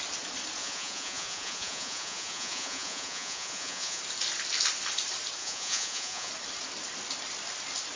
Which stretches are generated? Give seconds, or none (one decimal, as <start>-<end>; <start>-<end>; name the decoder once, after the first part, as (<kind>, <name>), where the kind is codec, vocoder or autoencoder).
0.6-4.0 (vocoder, Vocos); 5.4-6.3